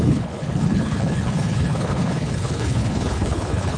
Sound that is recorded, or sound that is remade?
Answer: remade